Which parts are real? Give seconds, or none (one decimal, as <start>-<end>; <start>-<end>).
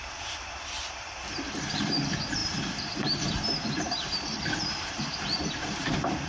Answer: none